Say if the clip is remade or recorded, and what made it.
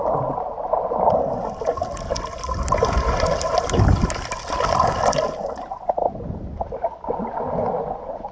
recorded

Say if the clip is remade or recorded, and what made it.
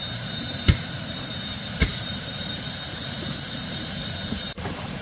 remade, vocoder, BigVGAN v2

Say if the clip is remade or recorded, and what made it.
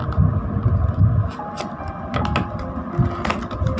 recorded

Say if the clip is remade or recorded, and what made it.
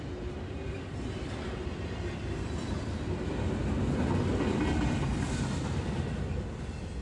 recorded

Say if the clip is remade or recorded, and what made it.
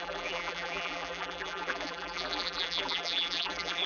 remade, vocoder, BigVGAN v2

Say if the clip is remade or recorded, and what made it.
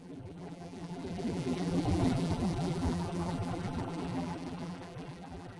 remade, vocoder, BigVGAN v2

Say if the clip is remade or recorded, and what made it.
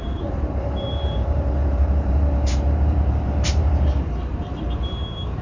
remade, vocoder, BigVGAN v2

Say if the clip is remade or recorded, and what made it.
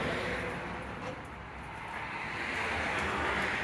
recorded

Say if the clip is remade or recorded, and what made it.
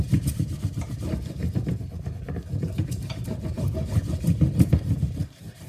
remade, vocoder, BigVGAN v2